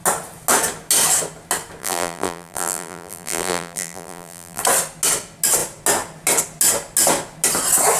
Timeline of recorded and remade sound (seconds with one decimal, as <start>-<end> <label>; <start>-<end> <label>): 0.0-1.8 recorded; 1.8-4.6 remade; 4.6-8.0 recorded